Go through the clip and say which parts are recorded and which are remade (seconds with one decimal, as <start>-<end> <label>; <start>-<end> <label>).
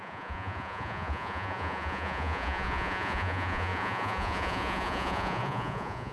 0.0-6.1 remade